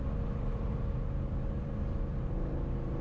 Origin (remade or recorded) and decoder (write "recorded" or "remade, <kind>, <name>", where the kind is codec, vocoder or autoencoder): remade, vocoder, BigVGAN v2